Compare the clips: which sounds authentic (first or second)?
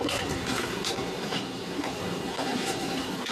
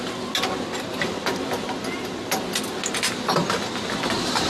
second